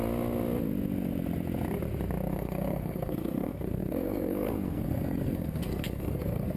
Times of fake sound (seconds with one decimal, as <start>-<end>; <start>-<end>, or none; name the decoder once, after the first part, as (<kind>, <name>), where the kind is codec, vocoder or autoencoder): 2.3-6.6 (codec, SNAC)